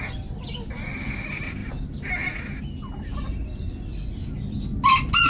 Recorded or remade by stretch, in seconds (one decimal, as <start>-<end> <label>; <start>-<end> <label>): 0.0-5.3 recorded